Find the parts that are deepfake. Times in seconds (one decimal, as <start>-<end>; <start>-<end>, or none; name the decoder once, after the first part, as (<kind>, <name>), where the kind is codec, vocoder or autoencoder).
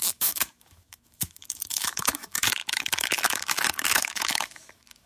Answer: 0.0-5.1 (autoencoder, DAC-VAE)